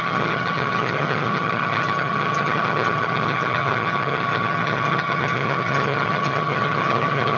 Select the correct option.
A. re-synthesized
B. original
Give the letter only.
A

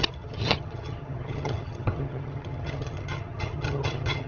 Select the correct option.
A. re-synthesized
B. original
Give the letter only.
A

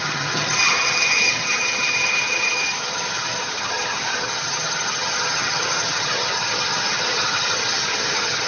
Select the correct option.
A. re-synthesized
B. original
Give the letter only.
A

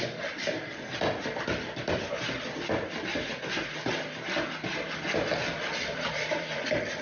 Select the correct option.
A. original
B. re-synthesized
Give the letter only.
A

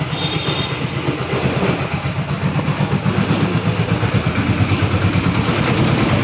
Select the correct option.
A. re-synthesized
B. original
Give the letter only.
B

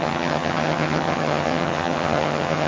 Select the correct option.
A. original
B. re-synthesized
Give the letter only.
B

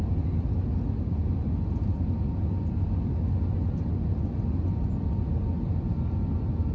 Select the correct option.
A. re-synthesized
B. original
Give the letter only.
B